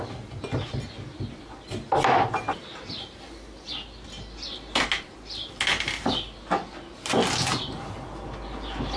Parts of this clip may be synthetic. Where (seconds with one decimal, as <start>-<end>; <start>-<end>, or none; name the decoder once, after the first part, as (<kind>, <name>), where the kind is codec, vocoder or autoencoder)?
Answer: none

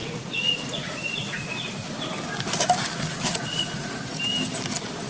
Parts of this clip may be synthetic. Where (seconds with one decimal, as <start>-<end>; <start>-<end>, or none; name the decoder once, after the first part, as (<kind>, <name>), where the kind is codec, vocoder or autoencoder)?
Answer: 0.0-1.7 (vocoder, Vocos); 3.1-4.2

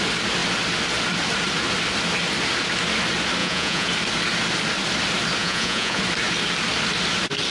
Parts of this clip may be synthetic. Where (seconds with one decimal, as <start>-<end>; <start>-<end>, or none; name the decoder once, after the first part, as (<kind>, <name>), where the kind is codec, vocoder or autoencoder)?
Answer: 3.4-3.9 (vocoder, Vocos); 5.4-6.0

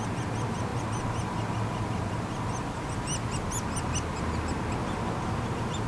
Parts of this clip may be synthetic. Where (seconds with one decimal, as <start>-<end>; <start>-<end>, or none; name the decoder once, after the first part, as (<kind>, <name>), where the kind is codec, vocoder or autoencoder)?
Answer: none

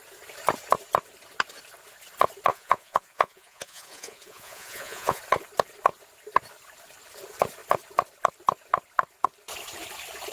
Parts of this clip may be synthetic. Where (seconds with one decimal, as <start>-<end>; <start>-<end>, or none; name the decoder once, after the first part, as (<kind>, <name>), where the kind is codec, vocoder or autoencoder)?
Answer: 2.5-5.2 (vocoder, Vocos)

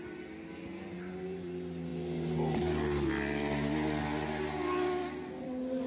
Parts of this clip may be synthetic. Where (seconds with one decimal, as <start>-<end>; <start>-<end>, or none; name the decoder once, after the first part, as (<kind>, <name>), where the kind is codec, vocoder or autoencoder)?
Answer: none

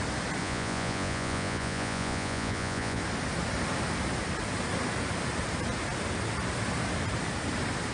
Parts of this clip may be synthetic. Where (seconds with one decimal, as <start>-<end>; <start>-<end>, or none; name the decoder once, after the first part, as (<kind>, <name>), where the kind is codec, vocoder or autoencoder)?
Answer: 0.4-3.0 (vocoder, Vocos)

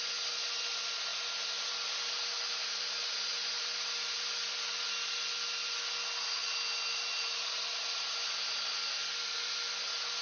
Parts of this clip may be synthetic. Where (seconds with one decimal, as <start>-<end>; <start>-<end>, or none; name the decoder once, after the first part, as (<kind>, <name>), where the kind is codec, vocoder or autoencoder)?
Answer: none